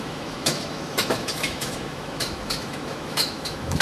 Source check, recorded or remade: remade